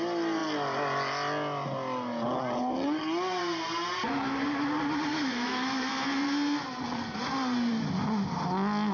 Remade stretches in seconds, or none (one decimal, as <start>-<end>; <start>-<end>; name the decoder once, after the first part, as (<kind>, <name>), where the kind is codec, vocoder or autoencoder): 5.1-5.9 (autoencoder, DAC-VAE)